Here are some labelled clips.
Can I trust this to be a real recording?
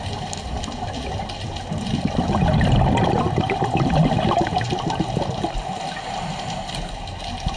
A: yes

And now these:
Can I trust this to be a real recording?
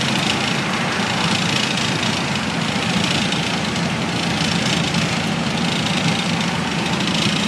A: no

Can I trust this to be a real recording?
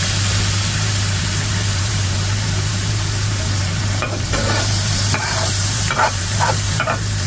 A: no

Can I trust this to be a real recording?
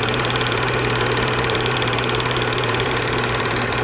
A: no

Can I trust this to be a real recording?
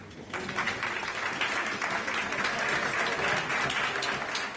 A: yes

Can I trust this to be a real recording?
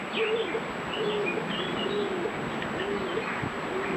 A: yes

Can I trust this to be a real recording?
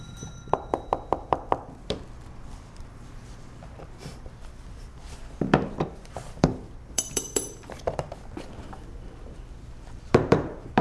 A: no